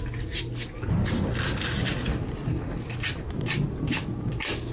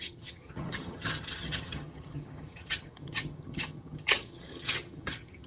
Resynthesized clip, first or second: second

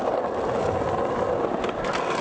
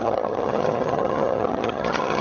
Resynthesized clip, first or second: second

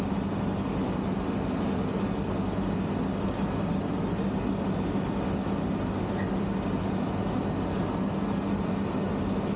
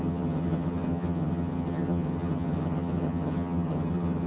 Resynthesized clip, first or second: second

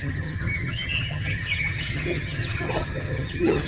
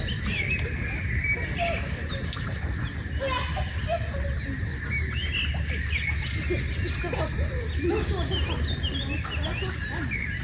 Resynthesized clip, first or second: first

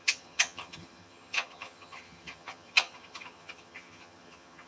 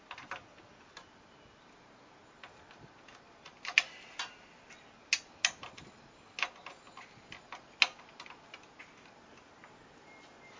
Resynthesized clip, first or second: first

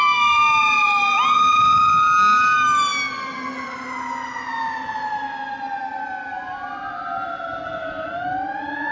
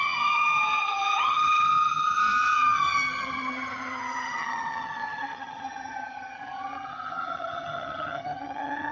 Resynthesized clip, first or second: second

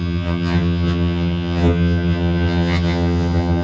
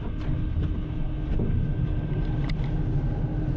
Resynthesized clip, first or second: first